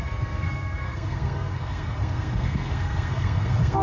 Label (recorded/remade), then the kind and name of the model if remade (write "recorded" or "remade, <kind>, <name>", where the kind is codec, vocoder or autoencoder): remade, codec, SNAC